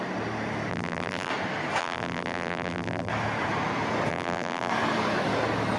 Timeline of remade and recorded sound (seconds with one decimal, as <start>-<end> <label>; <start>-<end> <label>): 0.0-0.7 recorded; 0.7-1.3 remade; 1.3-1.8 recorded; 1.8-3.1 remade; 3.1-4.1 recorded; 4.1-4.7 remade; 4.7-5.8 recorded